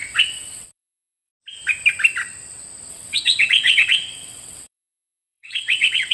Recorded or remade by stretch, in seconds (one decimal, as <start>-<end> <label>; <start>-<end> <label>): 0.0-1.3 remade; 1.3-2.9 recorded; 2.9-6.1 remade